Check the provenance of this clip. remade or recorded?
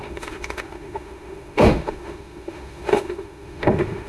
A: remade